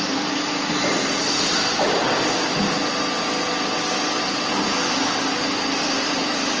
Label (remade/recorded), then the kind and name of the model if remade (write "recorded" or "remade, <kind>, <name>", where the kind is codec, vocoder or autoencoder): recorded